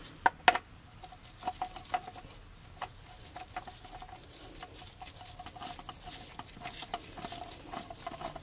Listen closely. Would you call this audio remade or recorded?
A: recorded